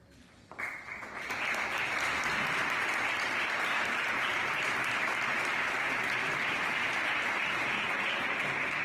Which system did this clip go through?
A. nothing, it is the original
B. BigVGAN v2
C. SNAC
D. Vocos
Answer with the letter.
A